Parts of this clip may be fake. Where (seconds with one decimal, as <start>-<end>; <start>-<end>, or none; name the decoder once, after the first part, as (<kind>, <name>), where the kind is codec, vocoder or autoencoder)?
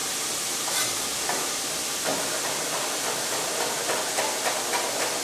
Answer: none